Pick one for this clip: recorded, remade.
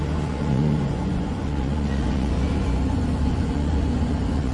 remade